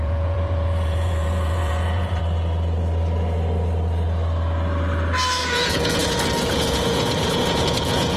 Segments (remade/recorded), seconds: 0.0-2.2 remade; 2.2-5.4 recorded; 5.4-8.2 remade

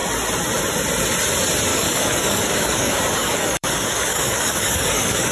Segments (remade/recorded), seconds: 0.0-1.7 recorded; 1.7-5.3 remade

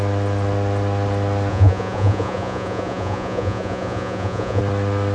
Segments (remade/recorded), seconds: 0.0-1.5 recorded; 1.5-4.6 remade; 4.6-5.1 recorded

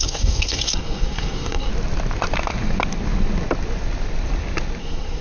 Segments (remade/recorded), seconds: 0.0-1.7 remade; 1.7-4.8 recorded; 4.8-5.2 remade

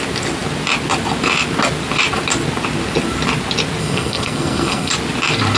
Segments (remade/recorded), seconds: 0.0-3.8 recorded; 3.8-4.9 remade; 4.9-5.6 recorded

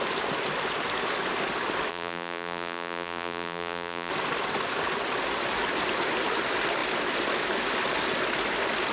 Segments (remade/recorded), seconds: 0.0-1.9 recorded; 1.9-4.1 remade; 4.1-8.9 recorded

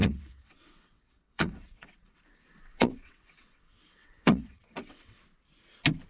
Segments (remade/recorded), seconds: 0.0-2.2 remade; 2.2-2.7 recorded; 2.7-5.2 remade; 5.2-6.1 recorded